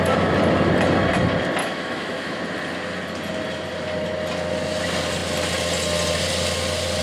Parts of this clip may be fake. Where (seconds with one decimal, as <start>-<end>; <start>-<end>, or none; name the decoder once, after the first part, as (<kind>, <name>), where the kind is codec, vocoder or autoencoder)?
1.6-2.4 (autoencoder, DAC-VAE)